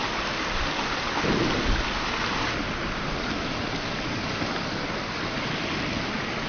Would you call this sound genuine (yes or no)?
yes